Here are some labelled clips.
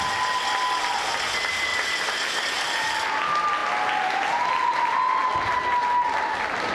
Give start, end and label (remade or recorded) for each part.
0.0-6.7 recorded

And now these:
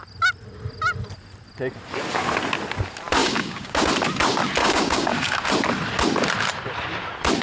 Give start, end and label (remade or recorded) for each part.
0.0-3.2 recorded; 3.2-3.9 remade; 3.9-4.6 recorded; 4.6-5.5 remade; 5.5-7.4 recorded

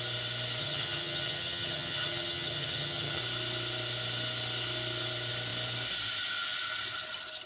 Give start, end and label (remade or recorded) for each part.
0.0-0.6 recorded; 0.6-3.2 remade; 3.2-7.5 recorded

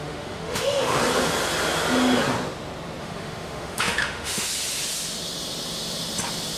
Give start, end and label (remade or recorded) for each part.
0.0-1.0 remade; 1.0-3.0 recorded; 3.0-4.5 remade; 4.5-6.6 recorded

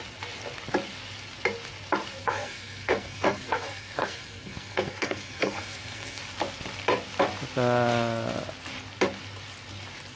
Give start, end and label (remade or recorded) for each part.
0.0-2.2 recorded; 2.2-6.2 remade; 6.2-10.2 recorded